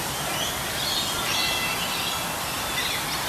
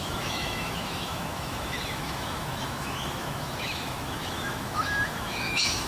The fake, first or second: second